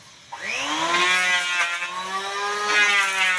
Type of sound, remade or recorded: recorded